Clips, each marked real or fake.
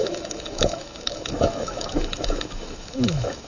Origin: fake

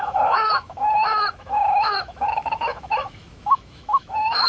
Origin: fake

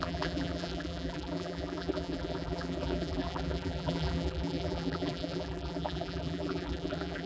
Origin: fake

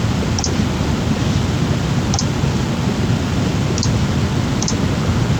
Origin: real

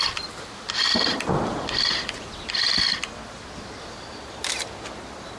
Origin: real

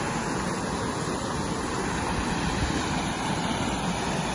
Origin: real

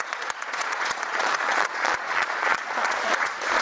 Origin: fake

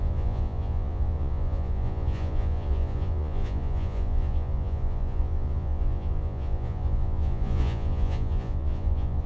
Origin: fake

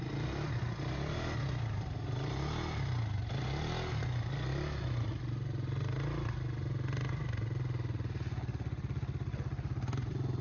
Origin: real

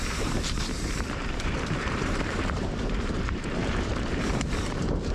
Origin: fake